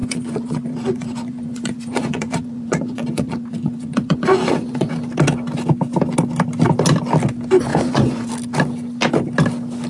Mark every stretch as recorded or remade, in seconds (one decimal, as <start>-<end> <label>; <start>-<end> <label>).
0.0-4.9 remade; 4.9-7.7 recorded; 7.7-8.3 remade; 8.3-9.9 recorded